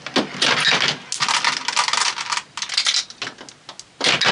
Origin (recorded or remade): recorded